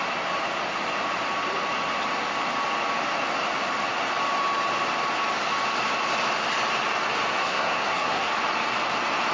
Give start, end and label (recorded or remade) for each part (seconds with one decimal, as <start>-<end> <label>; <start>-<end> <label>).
0.0-7.3 recorded; 7.3-8.3 remade; 8.3-9.3 recorded